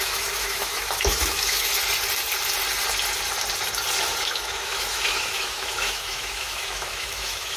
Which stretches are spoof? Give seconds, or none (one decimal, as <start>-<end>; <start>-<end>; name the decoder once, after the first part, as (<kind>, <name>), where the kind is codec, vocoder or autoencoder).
0.0-1.7 (autoencoder, DAC-VAE); 4.2-7.6